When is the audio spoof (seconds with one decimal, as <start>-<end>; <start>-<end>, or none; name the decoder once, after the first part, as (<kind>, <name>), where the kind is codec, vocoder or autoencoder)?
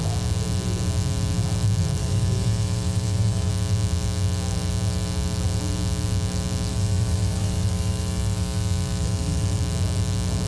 2.0-3.5 (autoencoder, DAC-VAE); 6.7-9.6